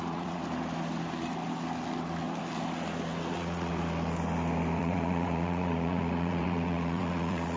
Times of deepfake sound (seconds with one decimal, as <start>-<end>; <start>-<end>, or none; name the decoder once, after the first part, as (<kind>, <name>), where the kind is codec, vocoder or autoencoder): 0.0-0.4 (vocoder, Vocos); 3.3-3.7; 4.8-7.6